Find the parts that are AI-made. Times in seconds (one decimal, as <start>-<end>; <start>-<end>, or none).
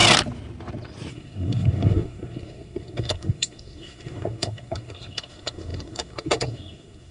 1.1-7.1